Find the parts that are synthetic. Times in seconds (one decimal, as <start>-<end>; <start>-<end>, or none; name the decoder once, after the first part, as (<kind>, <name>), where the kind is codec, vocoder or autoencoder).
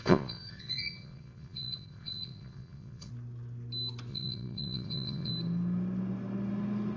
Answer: 0.0-3.1 (vocoder, Vocos); 4.1-5.3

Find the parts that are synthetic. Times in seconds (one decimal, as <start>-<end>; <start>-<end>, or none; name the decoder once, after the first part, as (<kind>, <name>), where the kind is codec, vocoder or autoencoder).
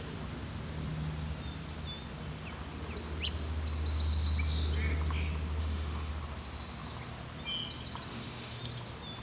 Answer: 5.6-6.1 (autoencoder, DAC-VAE); 8.1-8.6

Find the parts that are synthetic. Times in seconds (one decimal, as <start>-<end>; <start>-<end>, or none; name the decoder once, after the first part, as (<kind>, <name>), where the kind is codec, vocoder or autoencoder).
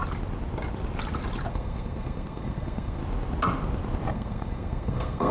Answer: 1.5-3.0 (codec, SNAC); 4.1-5.3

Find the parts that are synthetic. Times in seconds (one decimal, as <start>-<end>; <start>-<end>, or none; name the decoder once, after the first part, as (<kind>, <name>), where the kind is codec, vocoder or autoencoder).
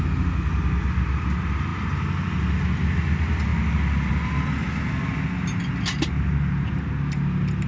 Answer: none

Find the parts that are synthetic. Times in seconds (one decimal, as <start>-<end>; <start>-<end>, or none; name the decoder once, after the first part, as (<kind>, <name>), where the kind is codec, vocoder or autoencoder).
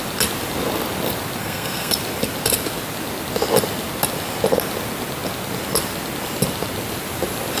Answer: 1.4-1.9 (codec, SNAC)